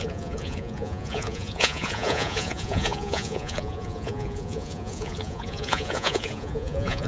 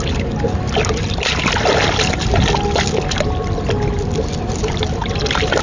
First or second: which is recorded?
second